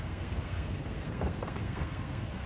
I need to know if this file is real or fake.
fake